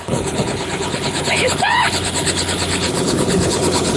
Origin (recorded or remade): remade